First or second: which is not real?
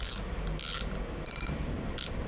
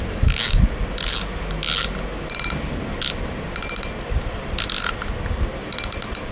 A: first